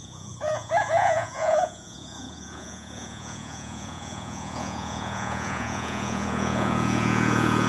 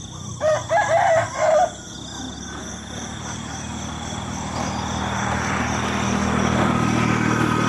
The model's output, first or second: first